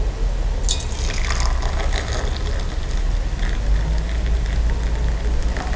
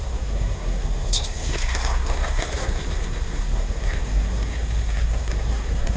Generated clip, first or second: second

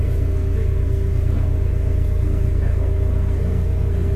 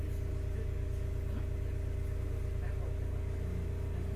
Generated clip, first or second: first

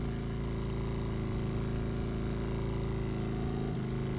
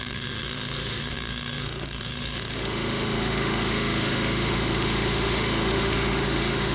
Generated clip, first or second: second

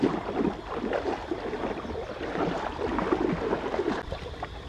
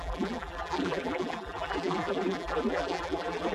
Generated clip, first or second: second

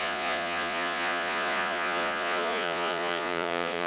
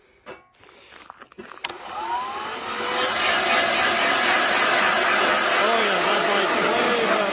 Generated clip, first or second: first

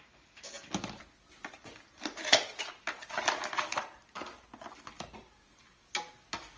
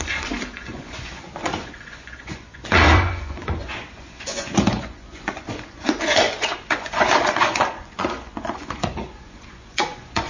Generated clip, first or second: second